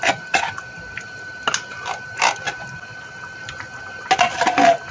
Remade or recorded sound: recorded